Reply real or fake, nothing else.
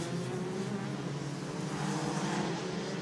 real